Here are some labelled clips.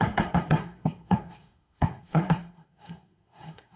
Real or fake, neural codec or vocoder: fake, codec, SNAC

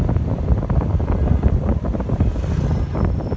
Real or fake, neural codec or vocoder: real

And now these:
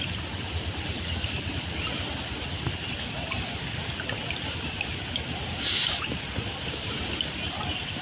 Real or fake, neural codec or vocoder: real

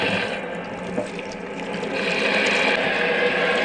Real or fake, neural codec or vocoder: real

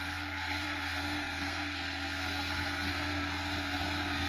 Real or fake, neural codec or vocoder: fake, codec, SNAC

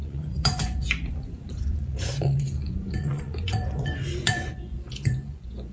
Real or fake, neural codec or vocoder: fake, vocoder, Vocos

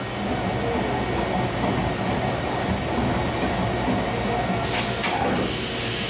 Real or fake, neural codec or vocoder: real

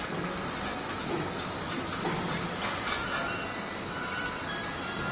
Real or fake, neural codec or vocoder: real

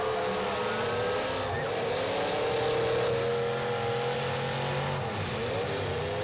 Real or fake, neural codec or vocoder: real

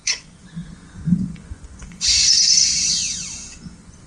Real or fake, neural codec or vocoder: fake, vocoder, Vocos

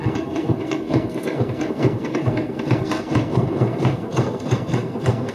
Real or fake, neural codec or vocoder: fake, codec, SNAC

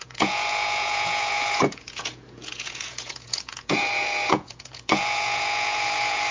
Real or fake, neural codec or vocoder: fake, vocoder, Vocos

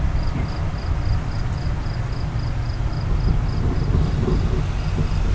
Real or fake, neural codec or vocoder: real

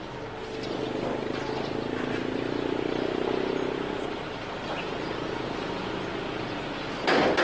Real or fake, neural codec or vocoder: real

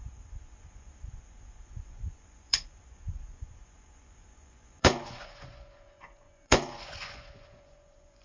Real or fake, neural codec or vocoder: fake, vocoder, Vocos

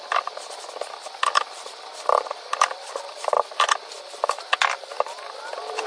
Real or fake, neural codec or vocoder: real